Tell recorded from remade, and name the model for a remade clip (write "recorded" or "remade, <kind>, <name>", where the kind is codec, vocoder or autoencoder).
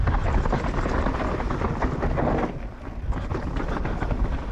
recorded